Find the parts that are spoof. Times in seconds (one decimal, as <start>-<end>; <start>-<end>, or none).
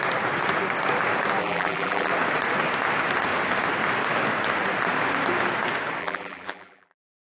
1.4-2.1; 6.0-7.0